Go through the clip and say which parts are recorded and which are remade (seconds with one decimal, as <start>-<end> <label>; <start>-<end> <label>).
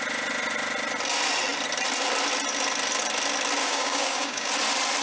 0.0-3.6 recorded; 3.6-4.5 remade; 4.5-5.0 recorded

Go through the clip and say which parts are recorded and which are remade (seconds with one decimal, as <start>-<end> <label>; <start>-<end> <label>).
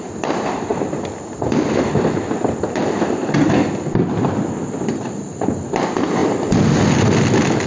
0.0-7.7 recorded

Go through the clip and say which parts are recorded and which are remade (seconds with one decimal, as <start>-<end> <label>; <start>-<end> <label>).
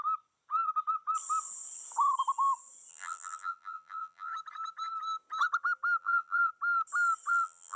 0.0-2.9 recorded; 2.9-4.3 remade; 4.3-6.0 recorded; 6.0-6.5 remade; 6.5-7.3 recorded; 7.3-7.8 remade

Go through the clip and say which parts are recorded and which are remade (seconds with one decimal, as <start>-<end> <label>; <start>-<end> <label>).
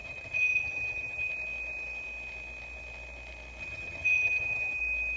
0.0-1.3 remade; 1.3-3.6 recorded; 3.6-4.8 remade; 4.8-5.2 recorded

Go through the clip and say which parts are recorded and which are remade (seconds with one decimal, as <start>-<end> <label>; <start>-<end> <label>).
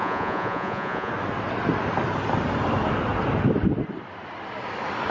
0.0-1.1 remade; 1.1-5.1 recorded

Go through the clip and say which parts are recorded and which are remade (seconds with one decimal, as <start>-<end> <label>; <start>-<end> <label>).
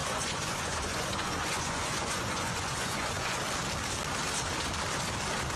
0.0-3.4 remade; 3.4-5.6 recorded